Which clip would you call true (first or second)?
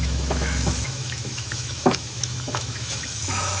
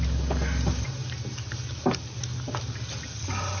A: second